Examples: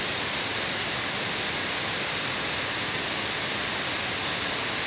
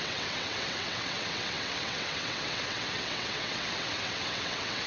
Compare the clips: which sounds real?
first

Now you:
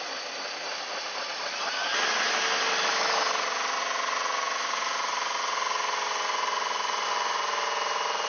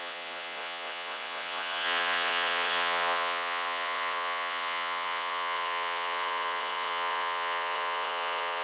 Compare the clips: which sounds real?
first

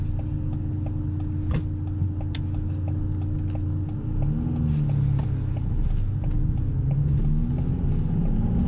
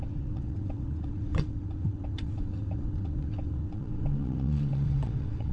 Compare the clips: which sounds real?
first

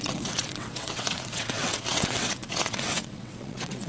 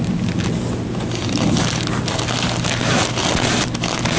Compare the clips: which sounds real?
second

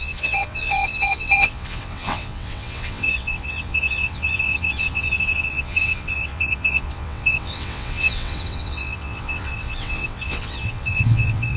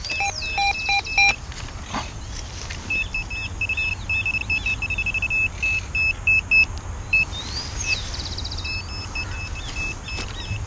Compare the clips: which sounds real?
second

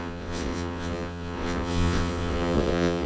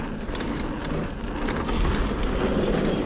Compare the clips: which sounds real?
second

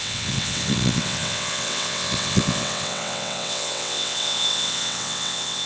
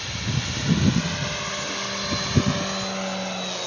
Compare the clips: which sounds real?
second